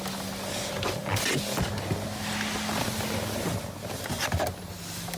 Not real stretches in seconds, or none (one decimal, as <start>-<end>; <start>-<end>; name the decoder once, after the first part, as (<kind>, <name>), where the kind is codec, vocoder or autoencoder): none